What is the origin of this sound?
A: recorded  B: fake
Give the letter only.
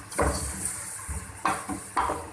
A